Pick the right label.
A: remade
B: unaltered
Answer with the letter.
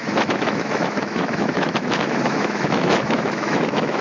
A